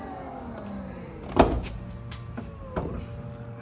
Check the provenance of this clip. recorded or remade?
recorded